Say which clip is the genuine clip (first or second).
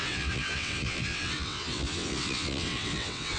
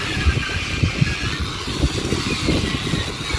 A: second